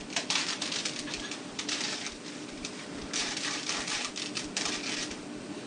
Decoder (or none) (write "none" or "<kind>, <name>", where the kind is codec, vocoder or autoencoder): vocoder, BigVGAN v2